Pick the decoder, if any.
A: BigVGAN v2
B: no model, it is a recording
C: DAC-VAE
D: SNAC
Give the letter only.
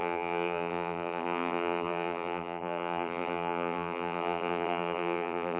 A